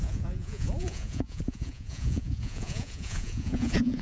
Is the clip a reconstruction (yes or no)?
yes